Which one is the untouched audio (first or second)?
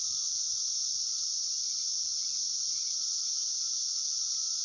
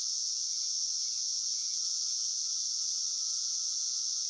first